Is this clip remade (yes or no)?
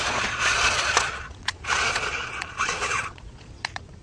yes